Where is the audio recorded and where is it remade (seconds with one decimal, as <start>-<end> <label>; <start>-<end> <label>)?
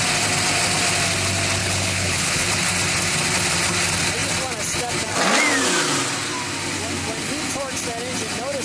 0.0-1.6 recorded; 1.6-2.5 remade; 2.5-8.6 recorded